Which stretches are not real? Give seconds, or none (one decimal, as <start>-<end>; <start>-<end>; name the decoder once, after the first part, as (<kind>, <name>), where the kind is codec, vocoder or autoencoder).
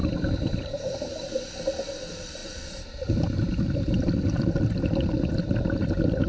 0.0-1.3 (vocoder, BigVGAN v2); 2.4-5.6